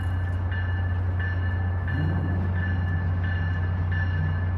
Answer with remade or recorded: recorded